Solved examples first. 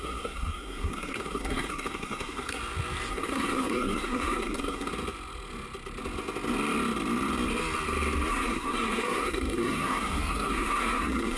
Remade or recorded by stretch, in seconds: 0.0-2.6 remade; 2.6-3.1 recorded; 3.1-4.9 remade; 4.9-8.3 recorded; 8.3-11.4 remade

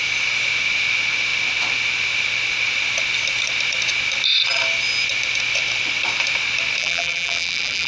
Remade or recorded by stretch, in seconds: 0.0-6.8 recorded; 6.8-7.9 remade

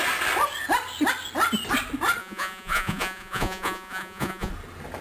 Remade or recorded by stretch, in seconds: 0.0-2.2 recorded; 2.2-4.5 remade; 4.5-5.0 recorded

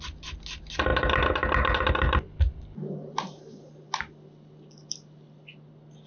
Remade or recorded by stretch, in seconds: 0.0-6.1 recorded

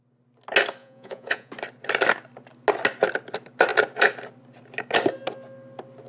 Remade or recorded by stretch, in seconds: 0.0-0.8 recorded; 0.8-1.5 remade; 1.5-6.1 recorded

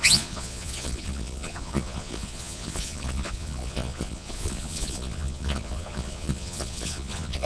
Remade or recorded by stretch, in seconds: 0.0-7.4 remade

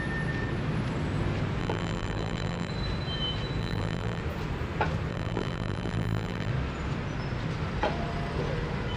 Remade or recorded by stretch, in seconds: 0.0-1.6 recorded; 1.6-2.7 remade; 2.7-3.6 recorded; 3.6-4.2 remade; 4.2-5.1 recorded; 5.1-6.5 remade; 6.5-9.0 recorded